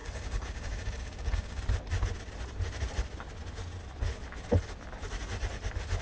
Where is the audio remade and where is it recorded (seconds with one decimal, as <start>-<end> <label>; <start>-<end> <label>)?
0.0-1.6 remade; 1.6-6.0 recorded